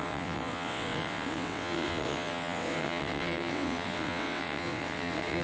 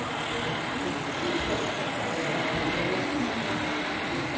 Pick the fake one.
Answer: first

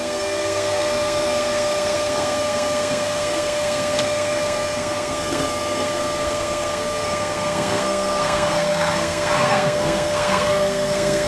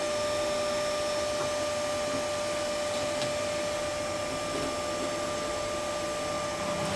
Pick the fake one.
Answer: first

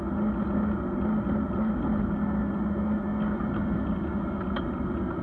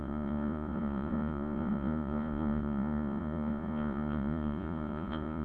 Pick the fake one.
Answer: second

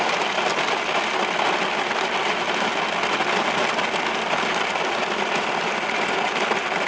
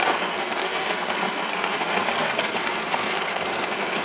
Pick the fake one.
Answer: second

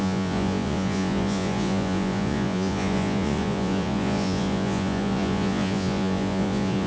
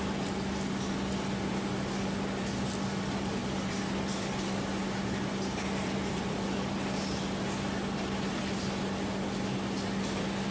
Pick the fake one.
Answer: first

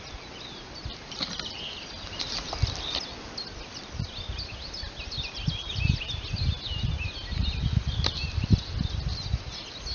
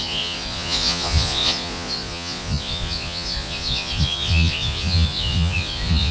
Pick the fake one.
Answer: second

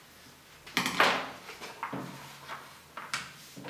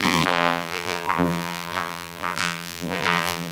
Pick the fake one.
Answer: second